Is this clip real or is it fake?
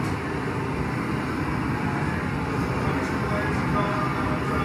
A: real